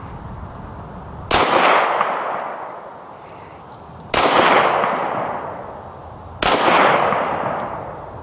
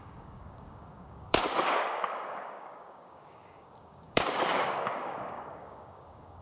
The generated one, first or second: second